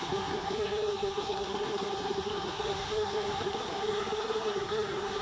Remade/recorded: remade